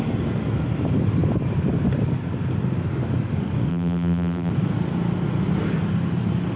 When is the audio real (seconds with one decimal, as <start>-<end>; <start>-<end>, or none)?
0.0-3.7; 4.5-6.6